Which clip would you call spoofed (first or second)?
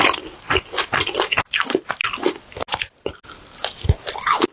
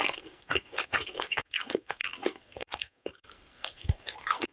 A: second